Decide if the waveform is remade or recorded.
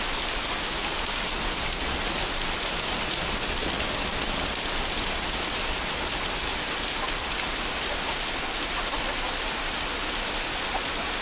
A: recorded